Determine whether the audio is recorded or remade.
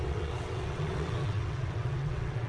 remade